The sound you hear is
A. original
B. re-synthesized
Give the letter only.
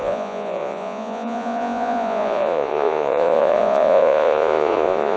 B